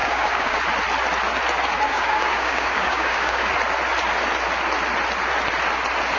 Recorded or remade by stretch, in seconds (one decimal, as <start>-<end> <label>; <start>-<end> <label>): 0.0-0.6 remade; 0.6-1.9 recorded; 1.9-3.5 remade; 3.5-6.2 recorded